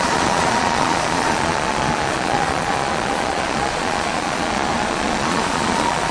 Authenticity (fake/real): fake